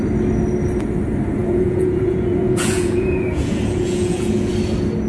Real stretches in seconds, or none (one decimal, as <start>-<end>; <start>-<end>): 0.0-1.4; 4.5-5.1